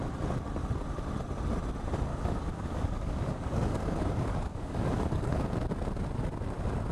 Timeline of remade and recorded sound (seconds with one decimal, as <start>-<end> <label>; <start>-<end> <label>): 0.0-2.1 recorded; 2.1-5.4 remade; 5.4-6.9 recorded